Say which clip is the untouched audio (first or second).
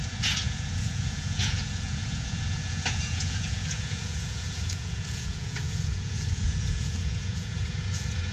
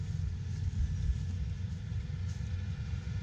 second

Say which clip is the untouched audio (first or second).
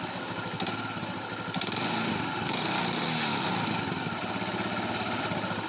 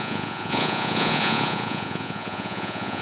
first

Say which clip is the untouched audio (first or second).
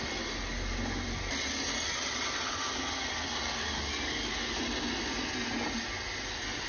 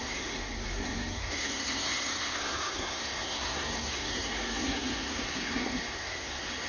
first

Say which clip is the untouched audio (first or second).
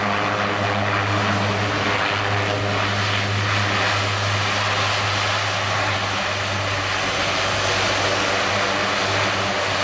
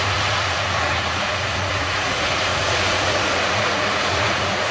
first